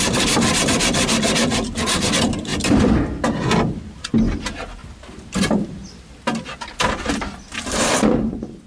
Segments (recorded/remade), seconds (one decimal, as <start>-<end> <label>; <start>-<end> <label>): 0.0-8.7 recorded